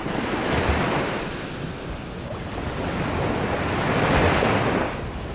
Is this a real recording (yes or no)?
yes